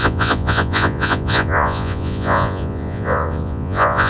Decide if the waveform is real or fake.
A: fake